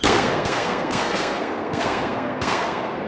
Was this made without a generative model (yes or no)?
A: no